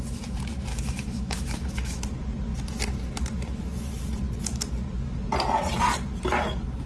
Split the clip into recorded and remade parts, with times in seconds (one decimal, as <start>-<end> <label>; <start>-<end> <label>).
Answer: 0.0-0.7 recorded; 0.7-2.0 remade; 2.0-6.9 recorded